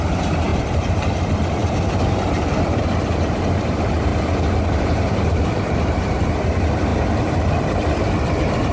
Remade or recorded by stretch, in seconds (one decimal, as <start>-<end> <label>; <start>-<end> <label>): 0.0-0.5 recorded; 0.5-1.2 remade; 1.2-4.1 recorded; 4.1-6.3 remade; 6.3-8.7 recorded